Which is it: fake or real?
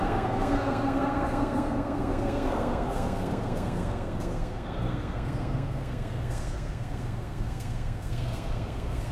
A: fake